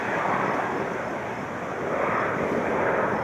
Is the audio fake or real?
real